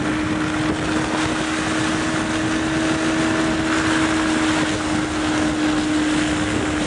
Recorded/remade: recorded